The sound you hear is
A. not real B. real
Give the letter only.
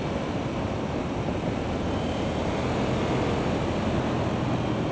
B